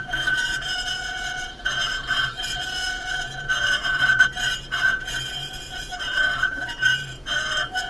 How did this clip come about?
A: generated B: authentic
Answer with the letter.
A